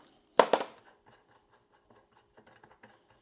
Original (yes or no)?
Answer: yes